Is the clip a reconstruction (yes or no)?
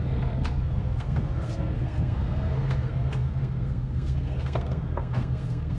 yes